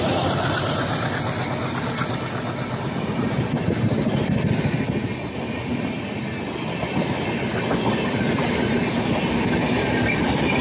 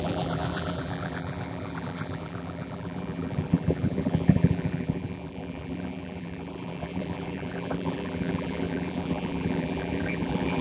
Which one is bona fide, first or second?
first